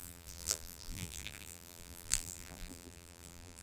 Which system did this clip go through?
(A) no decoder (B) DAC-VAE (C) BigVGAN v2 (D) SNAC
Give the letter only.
C